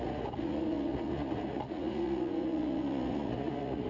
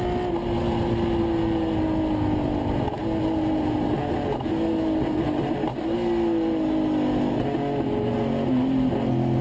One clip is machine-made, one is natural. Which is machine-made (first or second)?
first